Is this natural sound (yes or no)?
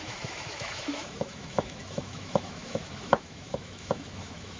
no